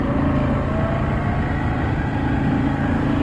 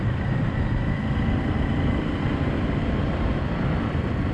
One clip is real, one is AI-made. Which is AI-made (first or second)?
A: second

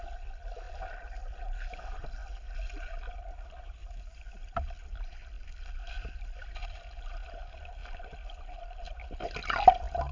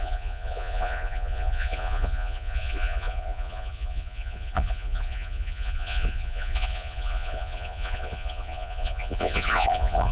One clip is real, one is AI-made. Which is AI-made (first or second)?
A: second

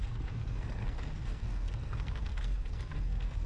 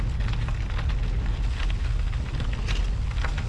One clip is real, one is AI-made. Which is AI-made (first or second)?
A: first